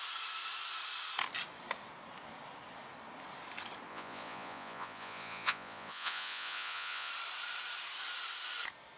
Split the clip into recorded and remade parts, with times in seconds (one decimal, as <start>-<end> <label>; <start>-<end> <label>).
0.0-3.9 recorded; 3.9-7.1 remade; 7.1-9.0 recorded